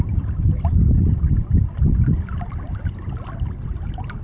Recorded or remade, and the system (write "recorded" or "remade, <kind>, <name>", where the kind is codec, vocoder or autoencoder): recorded